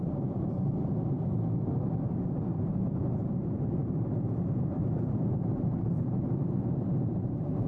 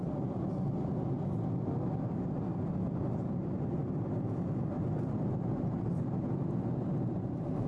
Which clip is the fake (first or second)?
first